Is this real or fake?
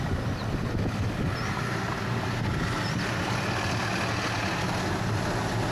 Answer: real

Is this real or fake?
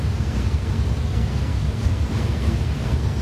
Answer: fake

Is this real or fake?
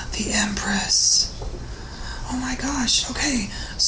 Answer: real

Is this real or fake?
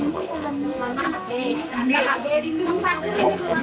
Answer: fake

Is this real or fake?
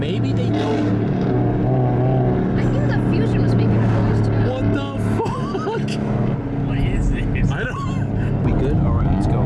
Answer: real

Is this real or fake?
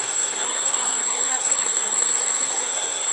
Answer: fake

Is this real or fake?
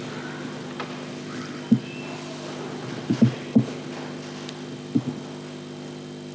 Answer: real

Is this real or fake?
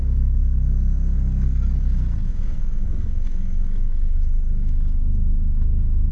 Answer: fake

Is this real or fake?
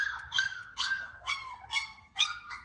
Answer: fake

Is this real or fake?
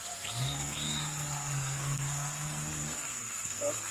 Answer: fake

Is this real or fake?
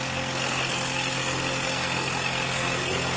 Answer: fake